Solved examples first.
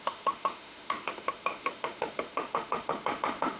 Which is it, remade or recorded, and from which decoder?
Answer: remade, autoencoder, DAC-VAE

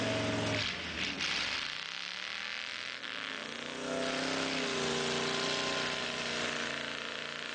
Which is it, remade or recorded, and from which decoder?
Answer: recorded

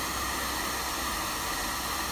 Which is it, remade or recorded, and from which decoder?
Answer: recorded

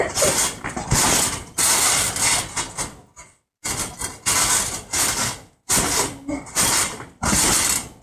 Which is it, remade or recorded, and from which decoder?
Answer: recorded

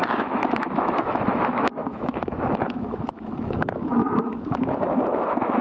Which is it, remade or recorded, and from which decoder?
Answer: remade, autoencoder, DAC-VAE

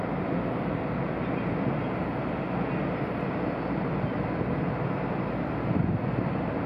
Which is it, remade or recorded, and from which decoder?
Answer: recorded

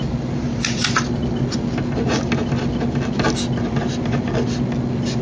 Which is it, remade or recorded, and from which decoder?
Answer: recorded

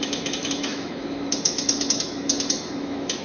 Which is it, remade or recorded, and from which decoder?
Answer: remade, autoencoder, DAC-VAE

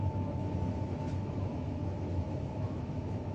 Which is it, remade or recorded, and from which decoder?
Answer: remade, autoencoder, DAC-VAE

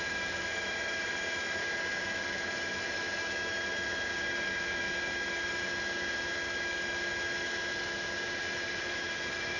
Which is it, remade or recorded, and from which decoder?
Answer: remade, autoencoder, DAC-VAE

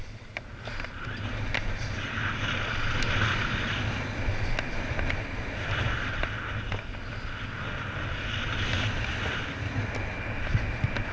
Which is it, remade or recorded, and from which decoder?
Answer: recorded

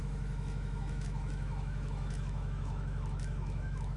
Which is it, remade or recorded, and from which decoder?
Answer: remade, autoencoder, DAC-VAE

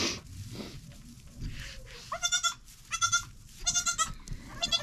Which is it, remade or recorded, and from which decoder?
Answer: recorded